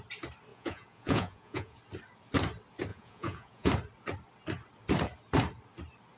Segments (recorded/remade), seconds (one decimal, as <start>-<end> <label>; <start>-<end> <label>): 0.0-0.5 recorded; 0.5-1.8 remade; 1.8-2.9 recorded; 2.9-3.7 remade; 3.7-6.2 recorded